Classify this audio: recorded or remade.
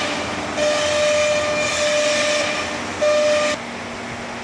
recorded